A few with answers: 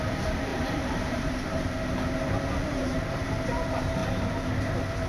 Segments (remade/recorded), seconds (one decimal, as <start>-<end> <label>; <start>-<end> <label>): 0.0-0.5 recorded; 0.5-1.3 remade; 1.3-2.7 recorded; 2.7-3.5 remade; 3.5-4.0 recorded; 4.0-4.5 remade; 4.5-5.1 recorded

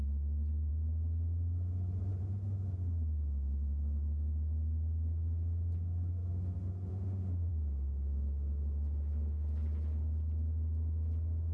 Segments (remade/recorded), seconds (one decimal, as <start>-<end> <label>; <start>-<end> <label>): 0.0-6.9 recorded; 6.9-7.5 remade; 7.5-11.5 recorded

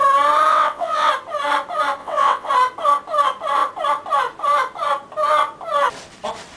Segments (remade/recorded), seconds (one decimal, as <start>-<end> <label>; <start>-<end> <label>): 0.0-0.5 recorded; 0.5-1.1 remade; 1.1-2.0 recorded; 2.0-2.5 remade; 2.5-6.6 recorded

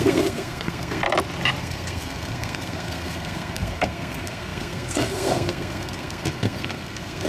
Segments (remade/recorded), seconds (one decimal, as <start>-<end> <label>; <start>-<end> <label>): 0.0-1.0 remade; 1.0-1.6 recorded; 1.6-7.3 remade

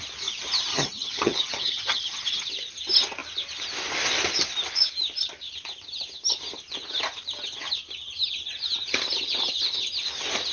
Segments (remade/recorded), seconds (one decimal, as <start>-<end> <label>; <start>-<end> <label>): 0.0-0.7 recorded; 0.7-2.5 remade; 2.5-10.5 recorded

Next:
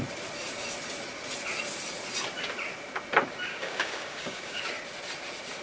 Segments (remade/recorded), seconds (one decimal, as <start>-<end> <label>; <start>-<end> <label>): 0.0-3.5 recorded; 3.5-4.6 remade; 4.6-5.6 recorded

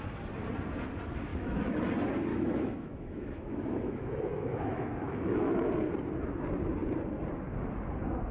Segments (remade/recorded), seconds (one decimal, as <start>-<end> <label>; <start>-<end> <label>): 0.0-1.3 recorded; 1.3-1.9 remade; 1.9-2.3 recorded; 2.3-5.7 remade; 5.7-8.3 recorded

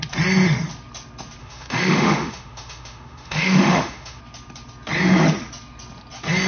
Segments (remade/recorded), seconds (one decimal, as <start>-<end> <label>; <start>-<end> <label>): 0.0-1.4 recorded; 1.4-4.2 remade; 4.2-6.5 recorded